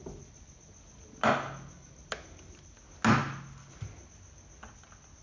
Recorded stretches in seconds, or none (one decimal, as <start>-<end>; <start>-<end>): 0.0-5.2